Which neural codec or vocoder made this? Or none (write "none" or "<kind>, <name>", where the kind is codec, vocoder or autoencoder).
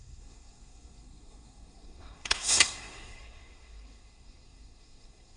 codec, SNAC